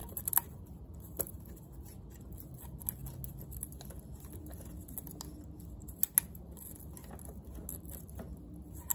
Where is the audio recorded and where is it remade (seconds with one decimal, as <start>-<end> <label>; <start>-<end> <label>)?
0.0-1.4 remade; 1.4-8.9 recorded